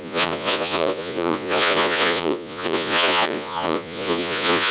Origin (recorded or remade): remade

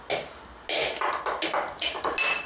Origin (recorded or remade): recorded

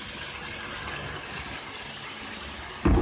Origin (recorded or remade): recorded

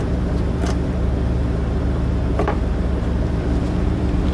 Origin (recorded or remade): remade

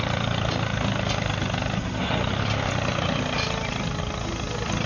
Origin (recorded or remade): recorded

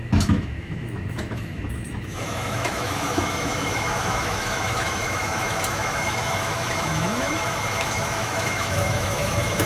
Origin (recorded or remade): remade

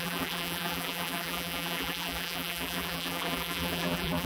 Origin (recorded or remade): remade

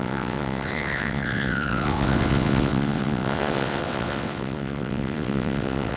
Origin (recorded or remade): remade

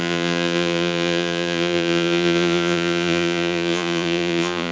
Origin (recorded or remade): remade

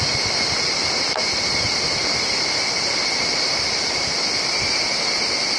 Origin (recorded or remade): recorded